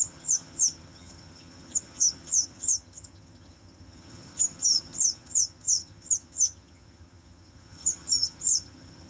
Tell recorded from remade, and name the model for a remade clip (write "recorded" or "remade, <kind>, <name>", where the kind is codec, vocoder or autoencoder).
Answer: remade, vocoder, HiFi-GAN